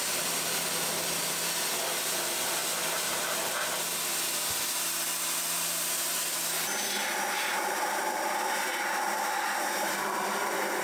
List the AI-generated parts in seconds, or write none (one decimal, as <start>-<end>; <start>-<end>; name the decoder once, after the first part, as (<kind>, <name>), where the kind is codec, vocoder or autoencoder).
7.5-8.0 (vocoder, BigVGAN v2)